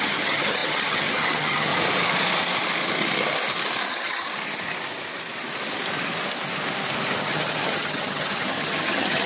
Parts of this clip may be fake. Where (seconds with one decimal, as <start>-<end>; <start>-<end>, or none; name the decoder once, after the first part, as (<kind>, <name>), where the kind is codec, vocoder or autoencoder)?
0.0-1.7 (vocoder, HiFi-GAN); 3.9-4.3; 7.2-9.3